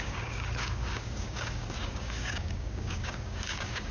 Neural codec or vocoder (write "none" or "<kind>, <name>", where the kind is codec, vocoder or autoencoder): codec, DAC